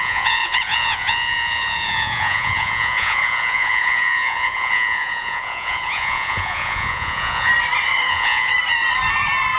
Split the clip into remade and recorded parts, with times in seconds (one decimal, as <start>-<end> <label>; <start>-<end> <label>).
0.0-7.5 remade; 7.5-8.1 recorded; 8.1-8.5 remade; 8.5-9.6 recorded